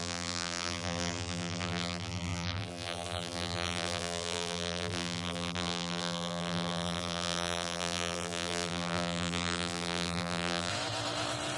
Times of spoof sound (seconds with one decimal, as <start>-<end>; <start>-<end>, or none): 0.0-10.7